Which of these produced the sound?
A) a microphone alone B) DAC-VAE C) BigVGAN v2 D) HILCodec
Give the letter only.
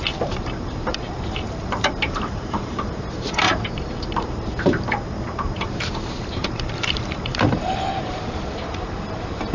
C